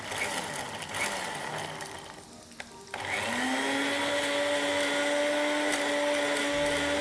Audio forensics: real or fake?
real